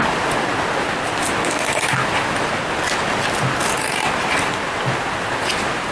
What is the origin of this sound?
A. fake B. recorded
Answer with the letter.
B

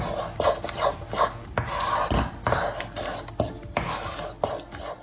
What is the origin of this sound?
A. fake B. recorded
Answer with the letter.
B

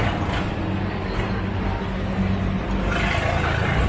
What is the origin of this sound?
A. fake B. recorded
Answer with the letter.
B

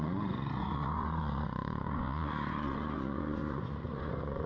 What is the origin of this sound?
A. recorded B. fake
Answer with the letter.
B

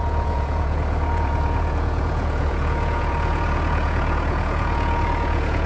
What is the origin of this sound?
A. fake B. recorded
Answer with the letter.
A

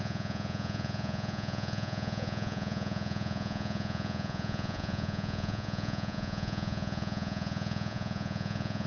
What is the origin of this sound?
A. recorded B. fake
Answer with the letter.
B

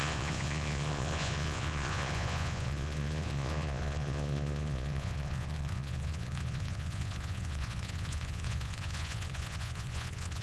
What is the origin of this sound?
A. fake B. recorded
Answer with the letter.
A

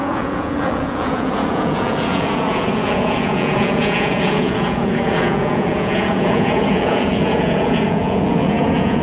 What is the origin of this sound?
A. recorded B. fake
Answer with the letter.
B